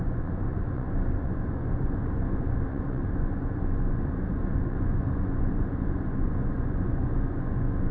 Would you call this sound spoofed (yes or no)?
yes